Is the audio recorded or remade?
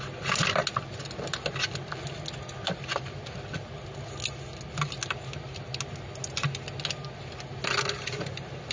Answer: recorded